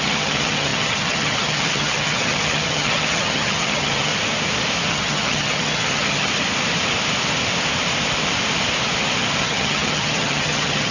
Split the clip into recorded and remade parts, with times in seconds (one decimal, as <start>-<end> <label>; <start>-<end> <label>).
0.0-4.1 remade; 4.1-4.9 recorded; 4.9-6.3 remade; 6.3-9.4 recorded; 9.4-10.9 remade